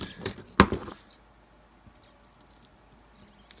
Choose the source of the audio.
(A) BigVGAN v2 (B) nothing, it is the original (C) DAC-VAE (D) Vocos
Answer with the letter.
B